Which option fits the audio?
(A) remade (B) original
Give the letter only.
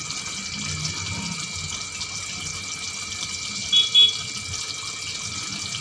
B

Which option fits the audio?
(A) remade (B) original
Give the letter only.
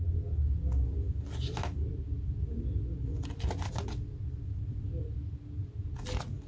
B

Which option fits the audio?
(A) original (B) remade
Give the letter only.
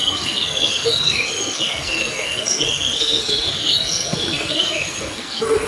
B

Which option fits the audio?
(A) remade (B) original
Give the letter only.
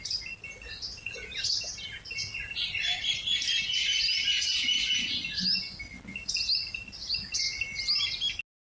B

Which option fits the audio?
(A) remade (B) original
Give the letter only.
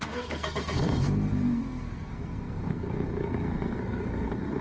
A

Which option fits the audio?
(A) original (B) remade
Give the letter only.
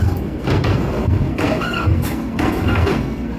B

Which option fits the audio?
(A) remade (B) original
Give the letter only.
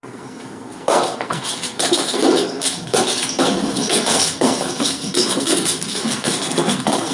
A